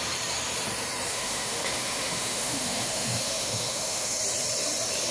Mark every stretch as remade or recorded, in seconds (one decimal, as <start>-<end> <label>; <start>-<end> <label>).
0.0-1.1 recorded; 1.1-4.2 remade; 4.2-5.1 recorded